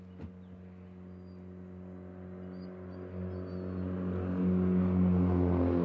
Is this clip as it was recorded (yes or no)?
yes